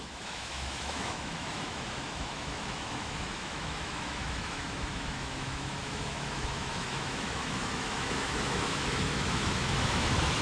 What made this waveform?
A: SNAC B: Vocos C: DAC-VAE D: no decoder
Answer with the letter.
C